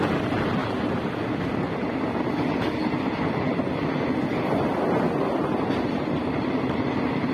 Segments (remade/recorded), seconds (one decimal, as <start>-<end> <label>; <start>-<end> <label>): 0.0-7.3 recorded